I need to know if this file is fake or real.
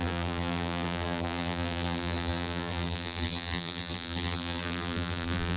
fake